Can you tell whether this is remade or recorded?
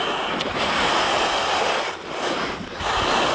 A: recorded